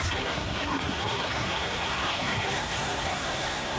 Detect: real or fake fake